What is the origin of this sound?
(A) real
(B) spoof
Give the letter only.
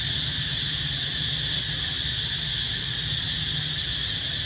A